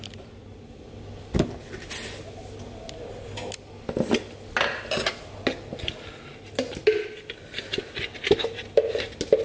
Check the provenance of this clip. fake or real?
real